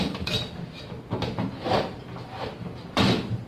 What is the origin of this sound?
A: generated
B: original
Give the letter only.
A